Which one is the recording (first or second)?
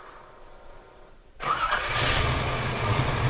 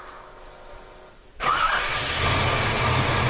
second